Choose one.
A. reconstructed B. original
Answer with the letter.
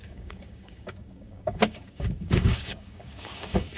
A